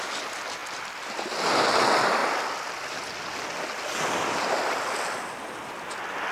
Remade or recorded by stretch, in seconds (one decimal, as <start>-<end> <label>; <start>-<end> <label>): 0.0-6.3 recorded